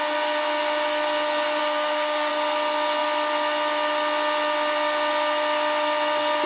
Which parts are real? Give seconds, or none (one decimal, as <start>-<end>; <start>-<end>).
0.0-1.6; 2.3-6.5